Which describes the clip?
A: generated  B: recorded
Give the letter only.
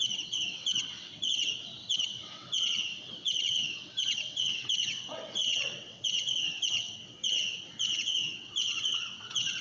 A